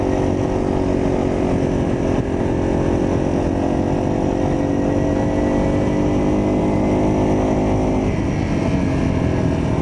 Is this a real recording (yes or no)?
yes